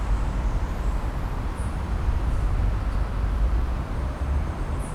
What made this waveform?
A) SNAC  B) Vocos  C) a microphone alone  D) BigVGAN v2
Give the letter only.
D